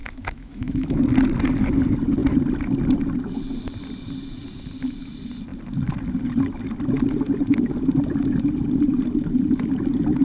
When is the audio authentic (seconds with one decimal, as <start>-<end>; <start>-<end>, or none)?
1.0-10.2